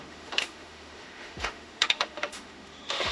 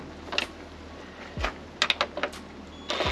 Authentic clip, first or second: second